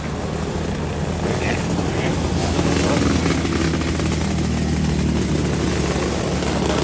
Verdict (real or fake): real